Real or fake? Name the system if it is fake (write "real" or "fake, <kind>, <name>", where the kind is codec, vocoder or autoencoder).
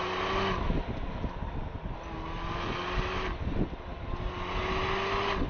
real